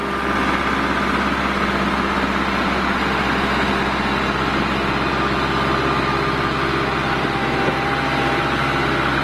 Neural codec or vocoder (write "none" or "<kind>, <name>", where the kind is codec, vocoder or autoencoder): none